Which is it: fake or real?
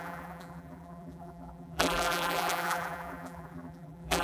fake